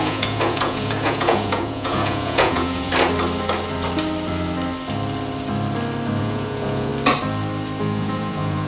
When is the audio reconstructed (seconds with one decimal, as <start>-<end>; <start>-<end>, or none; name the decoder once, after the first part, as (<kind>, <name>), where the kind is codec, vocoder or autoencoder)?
0.0-2.9 (vocoder, Vocos); 6.2-6.9; 7.8-8.7